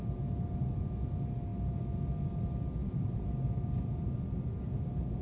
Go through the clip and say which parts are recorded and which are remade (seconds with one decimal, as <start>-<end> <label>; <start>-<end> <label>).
0.0-2.8 recorded; 2.8-5.2 remade